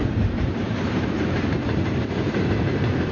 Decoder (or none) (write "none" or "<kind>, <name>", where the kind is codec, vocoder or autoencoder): vocoder, BigVGAN v2